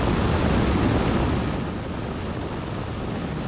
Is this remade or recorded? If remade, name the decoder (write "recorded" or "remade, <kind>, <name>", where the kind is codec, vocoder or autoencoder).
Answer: recorded